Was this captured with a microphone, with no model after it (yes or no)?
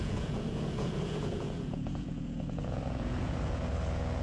no